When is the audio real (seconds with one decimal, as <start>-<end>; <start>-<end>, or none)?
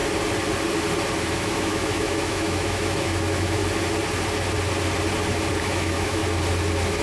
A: 0.0-1.2; 3.6-5.6; 6.2-7.0